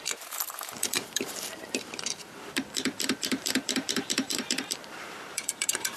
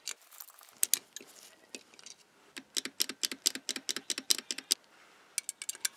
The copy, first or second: first